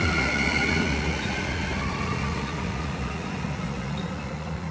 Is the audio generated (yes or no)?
yes